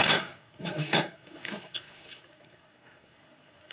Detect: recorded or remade remade